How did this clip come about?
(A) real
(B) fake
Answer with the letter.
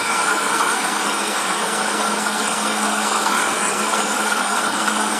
B